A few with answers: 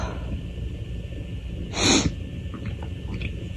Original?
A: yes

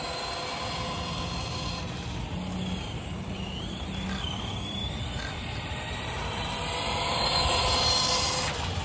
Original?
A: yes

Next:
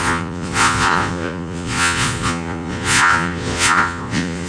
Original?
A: no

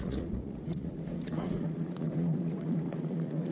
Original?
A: no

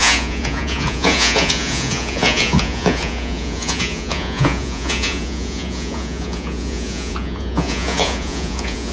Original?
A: no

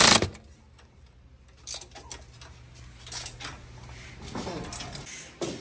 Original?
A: yes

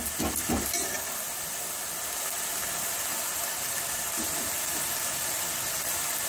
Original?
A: yes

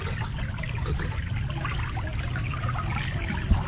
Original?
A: yes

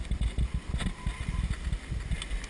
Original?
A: yes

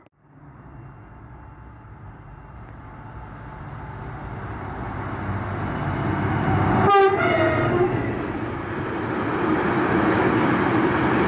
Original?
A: yes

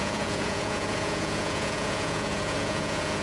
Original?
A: no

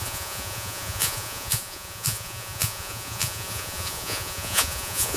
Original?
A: no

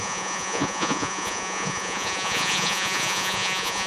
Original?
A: no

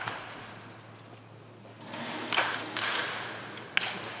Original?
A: yes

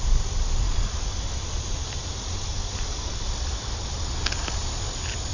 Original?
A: yes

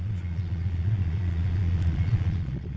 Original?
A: no